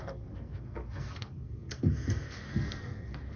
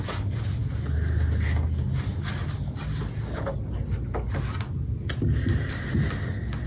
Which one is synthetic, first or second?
first